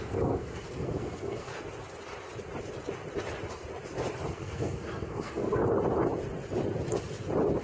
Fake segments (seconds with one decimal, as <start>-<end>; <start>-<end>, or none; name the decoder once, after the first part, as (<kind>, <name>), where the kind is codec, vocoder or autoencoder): 0.0-1.5 (codec, SNAC); 4.3-5.6